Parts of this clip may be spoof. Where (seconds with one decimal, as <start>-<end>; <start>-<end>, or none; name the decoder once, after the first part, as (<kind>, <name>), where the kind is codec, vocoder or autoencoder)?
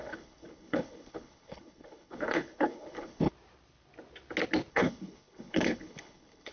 0.0-3.3 (codec, HILCodec); 4.7-6.5